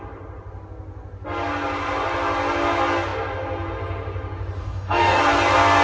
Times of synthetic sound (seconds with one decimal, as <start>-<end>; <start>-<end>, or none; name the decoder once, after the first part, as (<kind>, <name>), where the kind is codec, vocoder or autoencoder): 4.6-5.2 (codec, DAC)

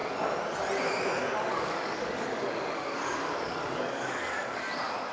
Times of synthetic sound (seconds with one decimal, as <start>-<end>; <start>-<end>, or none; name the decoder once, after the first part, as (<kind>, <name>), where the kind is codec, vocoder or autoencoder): 1.5-4.6 (codec, DAC)

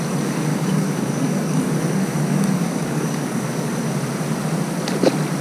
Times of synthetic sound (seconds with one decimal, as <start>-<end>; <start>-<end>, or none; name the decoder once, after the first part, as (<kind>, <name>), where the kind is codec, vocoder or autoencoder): 0.5-3.7 (codec, DAC)